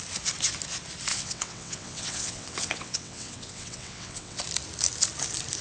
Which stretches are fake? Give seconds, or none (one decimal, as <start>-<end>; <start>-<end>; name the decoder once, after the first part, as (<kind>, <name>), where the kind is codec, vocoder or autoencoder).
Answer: 1.1-4.4 (vocoder, WaveNeXt)